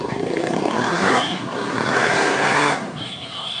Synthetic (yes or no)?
yes